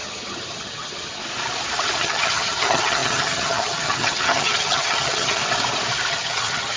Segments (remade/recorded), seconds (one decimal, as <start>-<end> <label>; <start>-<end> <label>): 0.0-1.2 remade; 1.2-2.0 recorded; 2.0-5.4 remade; 5.4-6.1 recorded; 6.1-6.8 remade